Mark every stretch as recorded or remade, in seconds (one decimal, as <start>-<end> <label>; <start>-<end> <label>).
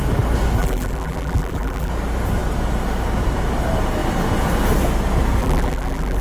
0.0-0.6 recorded; 0.6-1.9 remade; 1.9-5.4 recorded; 5.4-6.2 remade